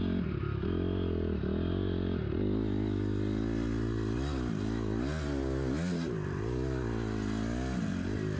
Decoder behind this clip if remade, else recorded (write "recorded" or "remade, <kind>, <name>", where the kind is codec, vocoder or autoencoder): recorded